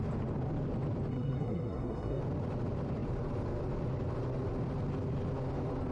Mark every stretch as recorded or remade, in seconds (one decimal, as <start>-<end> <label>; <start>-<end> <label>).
0.0-1.1 recorded; 1.1-2.2 remade; 2.2-5.9 recorded